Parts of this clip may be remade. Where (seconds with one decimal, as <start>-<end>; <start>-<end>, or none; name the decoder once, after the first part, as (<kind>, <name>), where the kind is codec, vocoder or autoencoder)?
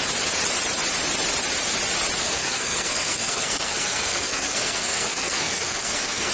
2.2-6.3 (codec, SNAC)